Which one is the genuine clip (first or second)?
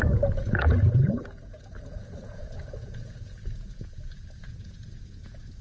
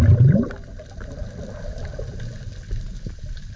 second